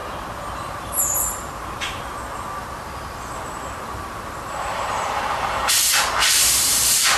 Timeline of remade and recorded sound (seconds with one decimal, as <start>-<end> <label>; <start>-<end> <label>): 0.0-0.7 recorded; 0.7-7.2 remade